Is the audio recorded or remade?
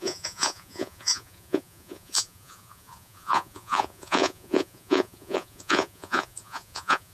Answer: remade